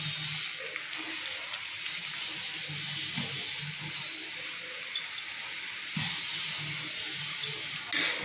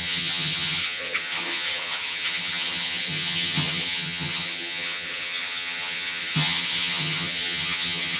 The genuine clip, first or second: first